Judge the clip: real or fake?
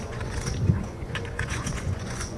fake